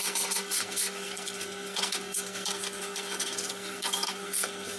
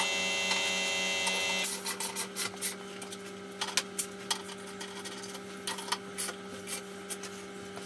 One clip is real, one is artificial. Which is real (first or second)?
second